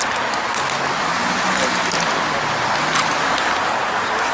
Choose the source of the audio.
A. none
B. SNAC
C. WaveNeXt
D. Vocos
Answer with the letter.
A